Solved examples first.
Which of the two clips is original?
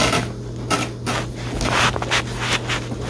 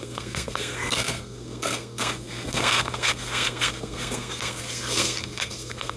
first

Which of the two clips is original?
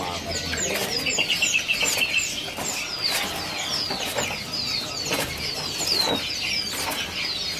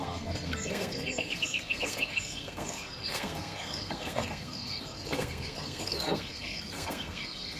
first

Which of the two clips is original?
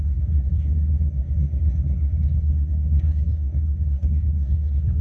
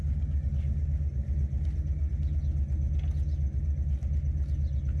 second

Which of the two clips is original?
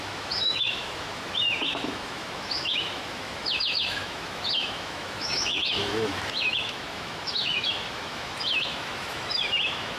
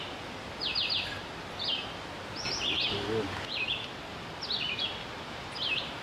second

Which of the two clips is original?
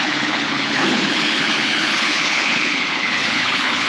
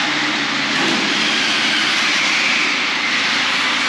second